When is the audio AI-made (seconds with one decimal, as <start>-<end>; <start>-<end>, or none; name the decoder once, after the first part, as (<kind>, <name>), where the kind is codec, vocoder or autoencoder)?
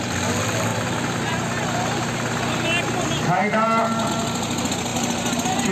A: none